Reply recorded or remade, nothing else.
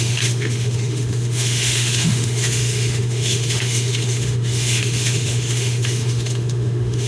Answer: remade